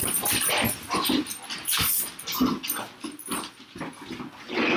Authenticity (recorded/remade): recorded